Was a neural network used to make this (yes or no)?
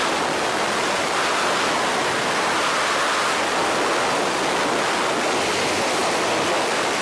no